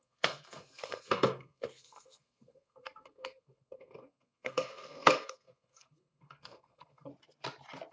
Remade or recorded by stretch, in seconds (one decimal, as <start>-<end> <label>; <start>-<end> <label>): 0.0-7.1 remade; 7.1-7.9 recorded